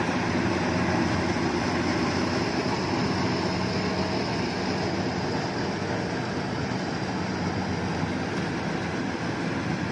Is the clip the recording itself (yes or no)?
yes